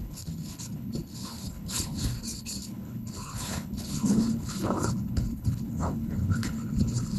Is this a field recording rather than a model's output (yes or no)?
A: no